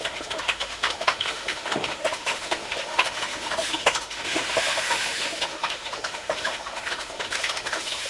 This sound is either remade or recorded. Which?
remade